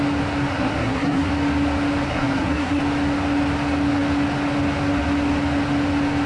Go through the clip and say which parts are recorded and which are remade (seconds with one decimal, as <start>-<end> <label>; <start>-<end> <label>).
0.0-0.5 recorded; 0.5-1.3 remade; 1.3-2.1 recorded; 2.1-2.8 remade; 2.8-6.3 recorded